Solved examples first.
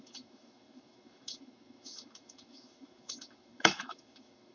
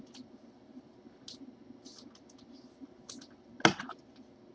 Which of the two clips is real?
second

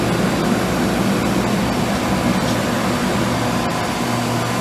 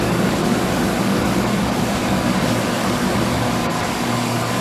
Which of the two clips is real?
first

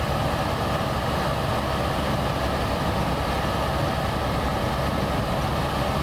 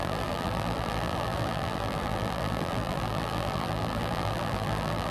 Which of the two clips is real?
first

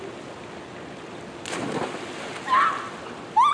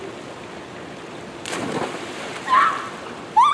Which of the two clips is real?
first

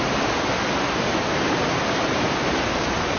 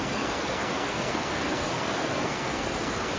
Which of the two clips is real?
first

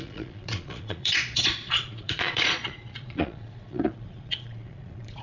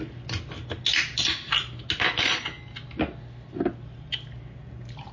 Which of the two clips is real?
second